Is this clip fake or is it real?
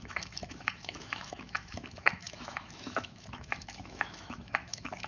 fake